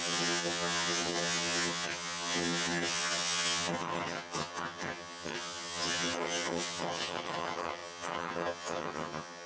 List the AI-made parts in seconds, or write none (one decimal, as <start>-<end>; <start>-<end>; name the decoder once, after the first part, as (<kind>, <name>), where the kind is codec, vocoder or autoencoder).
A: 0.0-9.5 (vocoder, HiFi-GAN)